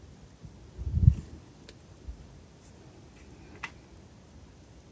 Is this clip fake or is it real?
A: real